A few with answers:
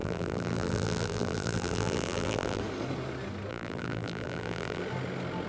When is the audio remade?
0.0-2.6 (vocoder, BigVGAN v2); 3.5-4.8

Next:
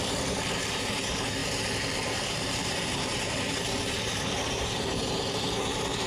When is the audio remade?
0.0-6.1 (vocoder, BigVGAN v2)

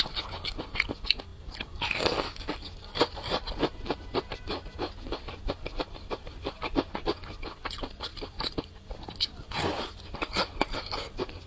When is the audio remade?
1.3-3.5 (vocoder, BigVGAN v2); 8.1-9.5

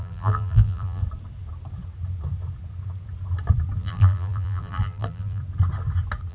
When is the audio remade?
0.0-1.0 (vocoder, BigVGAN v2); 3.8-5.4

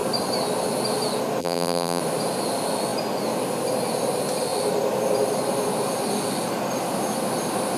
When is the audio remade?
1.4-2.0 (vocoder, BigVGAN v2)

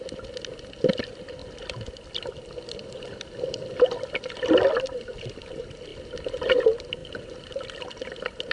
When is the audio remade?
none